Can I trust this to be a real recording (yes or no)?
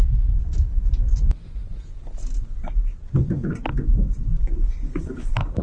yes